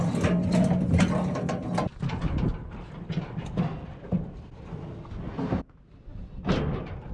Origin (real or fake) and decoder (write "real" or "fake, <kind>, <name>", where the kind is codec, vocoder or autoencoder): real